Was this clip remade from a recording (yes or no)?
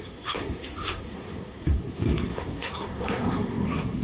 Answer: yes